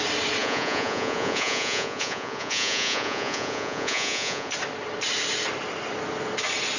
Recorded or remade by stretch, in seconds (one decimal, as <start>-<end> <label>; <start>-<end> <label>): 0.0-0.4 recorded; 0.4-4.5 remade; 4.5-6.8 recorded